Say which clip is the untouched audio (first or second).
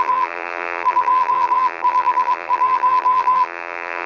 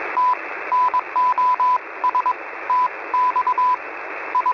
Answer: second